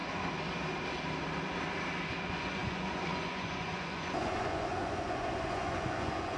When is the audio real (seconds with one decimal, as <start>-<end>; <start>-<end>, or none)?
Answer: 0.0-2.2